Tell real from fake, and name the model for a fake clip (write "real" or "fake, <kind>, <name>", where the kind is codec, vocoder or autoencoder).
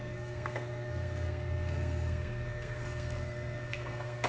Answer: fake, codec, SNAC